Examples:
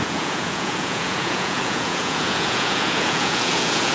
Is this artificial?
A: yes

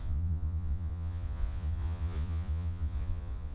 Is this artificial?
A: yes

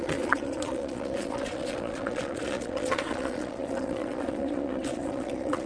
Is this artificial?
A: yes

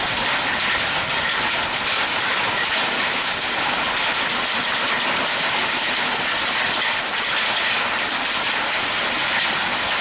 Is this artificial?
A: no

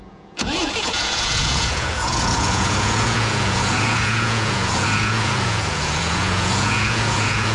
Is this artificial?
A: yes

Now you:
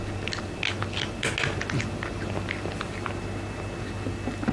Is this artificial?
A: no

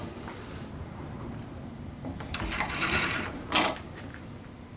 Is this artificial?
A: no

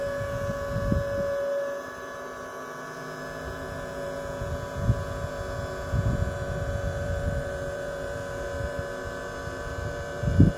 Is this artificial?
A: yes